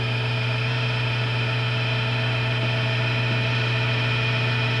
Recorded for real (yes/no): yes